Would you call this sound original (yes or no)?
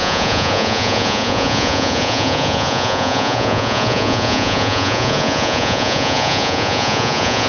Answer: no